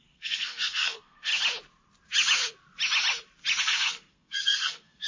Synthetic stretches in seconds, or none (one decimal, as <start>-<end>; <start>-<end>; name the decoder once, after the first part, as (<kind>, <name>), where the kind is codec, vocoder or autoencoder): 0.0-1.3 (codec, SNAC); 3.6-5.1